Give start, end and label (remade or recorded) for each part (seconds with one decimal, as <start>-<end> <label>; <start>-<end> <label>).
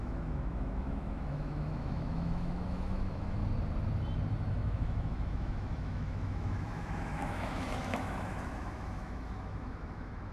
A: 0.0-3.4 remade; 3.4-4.5 recorded; 4.5-10.3 remade